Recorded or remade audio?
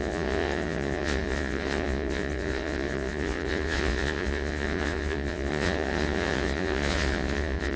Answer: remade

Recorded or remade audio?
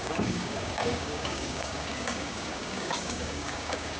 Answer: remade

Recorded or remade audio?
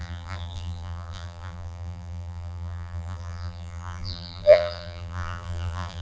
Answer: remade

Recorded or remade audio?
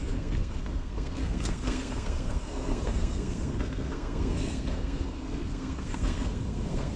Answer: remade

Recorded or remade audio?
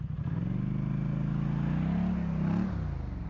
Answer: recorded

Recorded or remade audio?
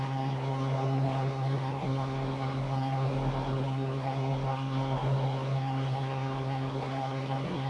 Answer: remade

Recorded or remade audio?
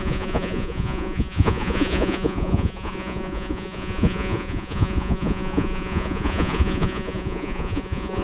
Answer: remade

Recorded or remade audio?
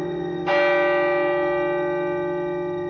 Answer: recorded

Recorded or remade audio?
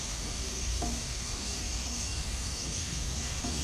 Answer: remade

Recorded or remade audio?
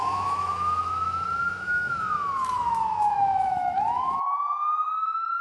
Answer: remade